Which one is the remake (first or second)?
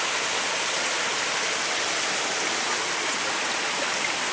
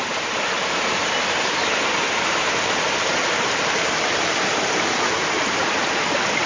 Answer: second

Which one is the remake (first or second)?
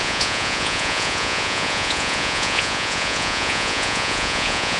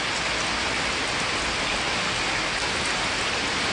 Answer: first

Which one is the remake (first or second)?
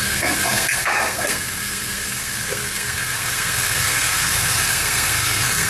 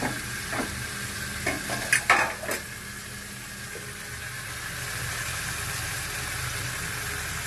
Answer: first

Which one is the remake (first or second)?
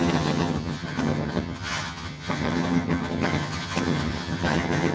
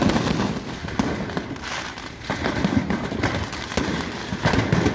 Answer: first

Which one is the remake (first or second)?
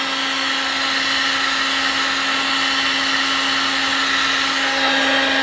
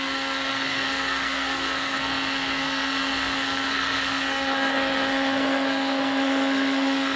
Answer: second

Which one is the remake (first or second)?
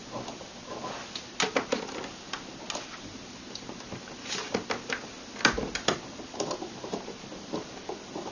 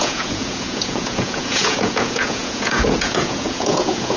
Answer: second